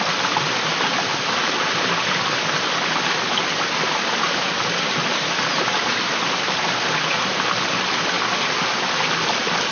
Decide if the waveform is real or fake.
real